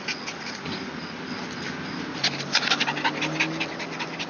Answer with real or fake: real